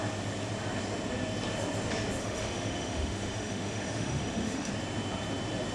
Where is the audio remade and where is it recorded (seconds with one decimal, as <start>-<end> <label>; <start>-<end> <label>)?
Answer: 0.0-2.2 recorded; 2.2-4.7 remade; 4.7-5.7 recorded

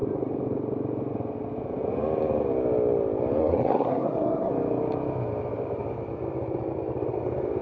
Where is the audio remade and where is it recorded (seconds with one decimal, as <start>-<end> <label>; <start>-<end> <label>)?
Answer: 0.0-3.4 recorded; 3.4-4.5 remade; 4.5-7.6 recorded

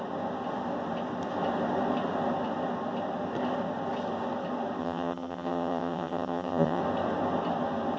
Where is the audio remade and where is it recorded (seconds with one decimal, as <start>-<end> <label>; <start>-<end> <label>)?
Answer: 0.0-4.8 recorded; 4.8-6.8 remade; 6.8-8.0 recorded

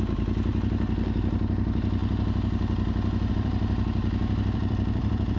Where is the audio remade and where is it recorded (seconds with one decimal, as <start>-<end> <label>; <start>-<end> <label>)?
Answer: 0.0-0.5 remade; 0.5-1.2 recorded; 1.2-5.4 remade